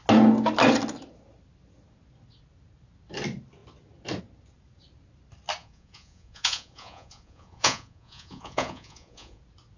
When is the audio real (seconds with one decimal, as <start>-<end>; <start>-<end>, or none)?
0.0-5.6; 9.4-9.8